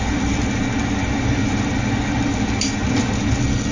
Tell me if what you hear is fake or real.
real